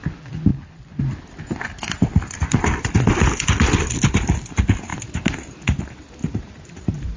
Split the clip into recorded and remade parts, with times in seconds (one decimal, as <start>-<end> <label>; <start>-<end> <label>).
0.0-6.2 recorded; 6.2-7.2 remade